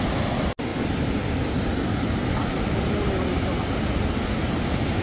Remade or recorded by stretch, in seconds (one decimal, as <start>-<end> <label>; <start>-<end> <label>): 0.0-5.0 recorded